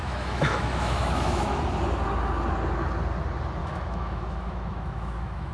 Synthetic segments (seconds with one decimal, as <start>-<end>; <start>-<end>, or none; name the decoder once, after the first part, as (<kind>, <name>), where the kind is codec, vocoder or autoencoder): 0.0-1.6 (autoencoder, DAC-VAE); 3.6-5.5